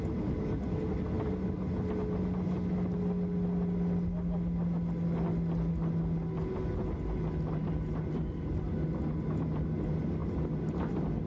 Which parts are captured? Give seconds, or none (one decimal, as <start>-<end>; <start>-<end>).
0.0-11.3